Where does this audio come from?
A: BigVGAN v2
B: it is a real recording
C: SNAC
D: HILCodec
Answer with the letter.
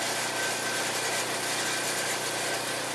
B